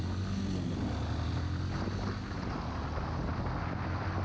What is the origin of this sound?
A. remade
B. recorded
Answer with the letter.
B